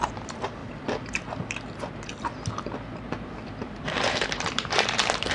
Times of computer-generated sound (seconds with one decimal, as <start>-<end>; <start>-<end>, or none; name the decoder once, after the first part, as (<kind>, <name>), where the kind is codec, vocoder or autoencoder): 0.0-0.6 (vocoder, BigVGAN v2); 3.8-5.3